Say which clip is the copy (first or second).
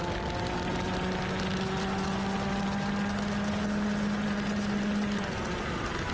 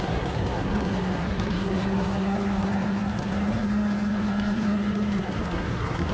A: second